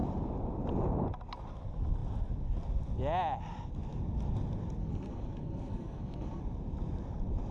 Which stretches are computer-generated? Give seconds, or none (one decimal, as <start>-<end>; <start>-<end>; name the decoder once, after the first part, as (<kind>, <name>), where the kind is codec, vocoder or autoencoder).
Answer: 4.8-6.4 (codec, SNAC)